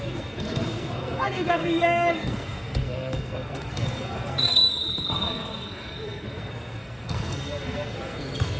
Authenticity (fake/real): fake